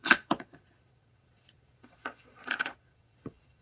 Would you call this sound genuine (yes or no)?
no